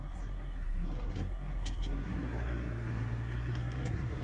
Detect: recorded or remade remade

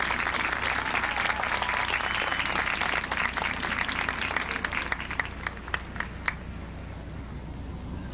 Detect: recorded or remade recorded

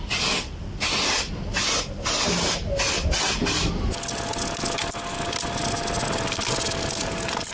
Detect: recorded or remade recorded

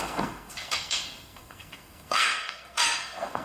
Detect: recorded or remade remade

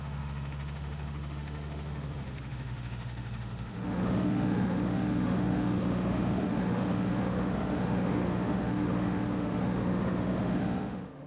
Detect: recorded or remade remade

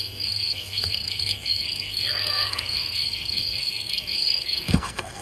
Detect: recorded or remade remade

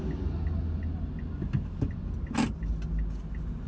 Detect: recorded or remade recorded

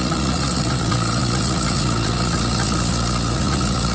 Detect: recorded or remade remade